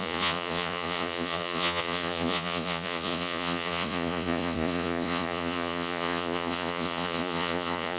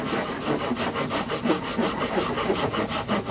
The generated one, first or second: first